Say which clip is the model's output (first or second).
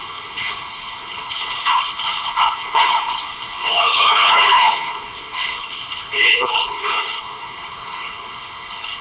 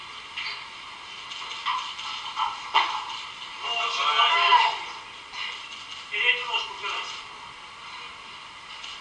first